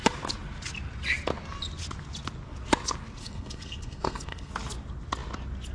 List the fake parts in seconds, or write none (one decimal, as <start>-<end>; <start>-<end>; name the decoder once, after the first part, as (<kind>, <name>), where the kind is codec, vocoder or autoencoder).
3.2-4.5 (codec, SNAC)